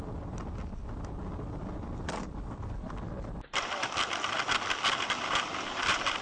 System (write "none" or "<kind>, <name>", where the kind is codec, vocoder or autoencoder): vocoder, BigVGAN v2